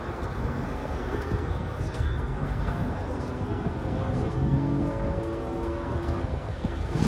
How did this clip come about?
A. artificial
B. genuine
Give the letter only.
A